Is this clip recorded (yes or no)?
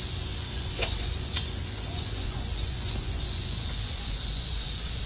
no